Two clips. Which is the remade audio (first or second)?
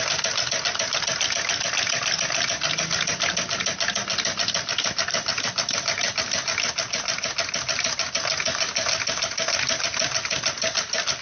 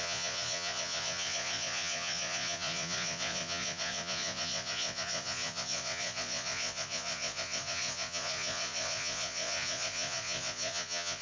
second